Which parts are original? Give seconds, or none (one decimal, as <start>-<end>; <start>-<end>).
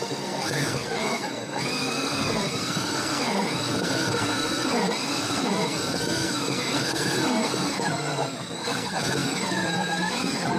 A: none